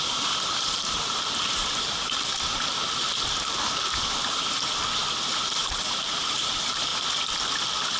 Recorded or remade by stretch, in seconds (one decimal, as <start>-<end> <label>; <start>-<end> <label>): 0.0-2.3 remade; 2.3-5.6 recorded; 5.6-6.9 remade; 6.9-8.0 recorded